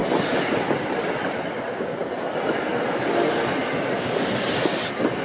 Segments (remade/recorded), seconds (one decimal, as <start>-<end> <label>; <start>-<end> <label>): 0.0-5.2 recorded

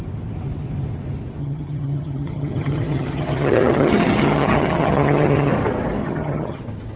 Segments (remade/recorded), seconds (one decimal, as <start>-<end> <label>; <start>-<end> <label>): 0.0-1.4 recorded; 1.4-5.5 remade; 5.5-6.0 recorded; 6.0-6.6 remade; 6.6-7.0 recorded

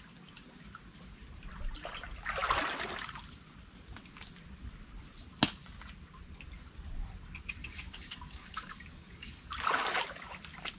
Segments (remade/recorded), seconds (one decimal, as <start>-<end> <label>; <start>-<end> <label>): 0.0-7.6 recorded; 7.6-9.4 remade; 9.4-10.8 recorded

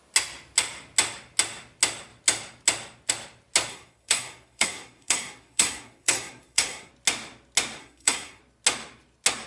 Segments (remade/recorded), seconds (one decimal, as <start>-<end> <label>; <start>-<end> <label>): 0.0-3.7 recorded; 3.7-6.9 remade; 6.9-7.8 recorded; 7.8-8.4 remade; 8.4-9.5 recorded

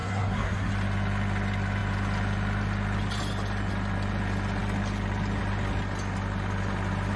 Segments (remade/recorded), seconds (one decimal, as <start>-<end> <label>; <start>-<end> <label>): 0.0-0.7 remade; 0.7-7.2 recorded